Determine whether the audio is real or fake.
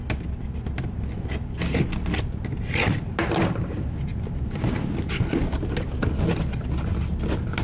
real